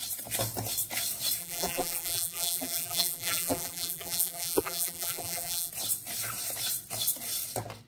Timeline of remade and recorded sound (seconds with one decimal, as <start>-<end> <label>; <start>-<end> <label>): 0.0-1.4 recorded; 1.4-5.7 remade; 5.7-7.9 recorded